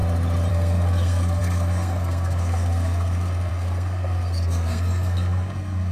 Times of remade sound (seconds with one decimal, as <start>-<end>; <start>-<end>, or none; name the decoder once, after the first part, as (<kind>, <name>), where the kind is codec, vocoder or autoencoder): 0.5-5.9 (codec, SNAC)